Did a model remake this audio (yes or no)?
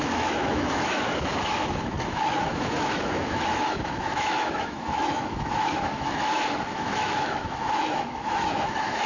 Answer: yes